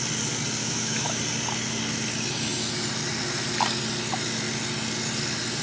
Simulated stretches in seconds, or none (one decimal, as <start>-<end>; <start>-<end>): 0.6-1.2